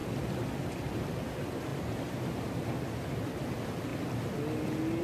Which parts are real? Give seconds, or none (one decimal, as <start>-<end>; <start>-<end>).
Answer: 0.0-5.0